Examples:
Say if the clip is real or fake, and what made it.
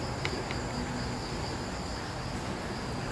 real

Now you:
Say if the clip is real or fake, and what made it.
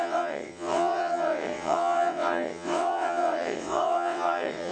fake, vocoder, WaveNeXt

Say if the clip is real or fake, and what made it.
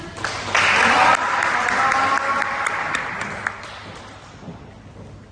real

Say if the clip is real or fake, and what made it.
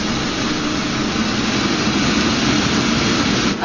real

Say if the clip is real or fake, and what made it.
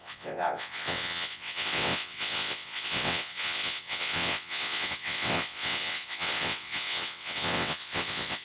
fake, vocoder, WaveNeXt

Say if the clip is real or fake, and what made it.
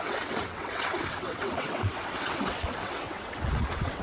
fake, vocoder, WaveNeXt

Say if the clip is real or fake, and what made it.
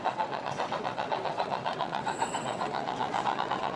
fake, vocoder, WaveNeXt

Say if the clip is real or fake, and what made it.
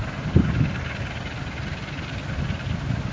real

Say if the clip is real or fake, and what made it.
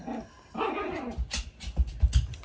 real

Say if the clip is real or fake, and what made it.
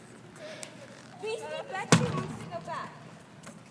real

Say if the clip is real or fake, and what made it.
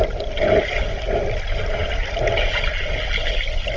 real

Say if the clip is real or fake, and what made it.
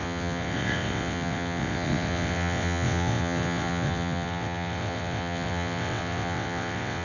fake, vocoder, WaveNeXt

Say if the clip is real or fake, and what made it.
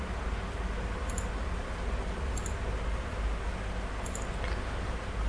real